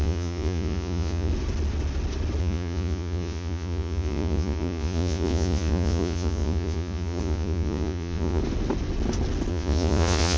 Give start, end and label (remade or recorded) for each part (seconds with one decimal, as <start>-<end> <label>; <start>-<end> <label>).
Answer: 0.0-1.3 remade; 1.3-2.4 recorded; 2.4-8.4 remade; 8.4-9.5 recorded; 9.5-10.4 remade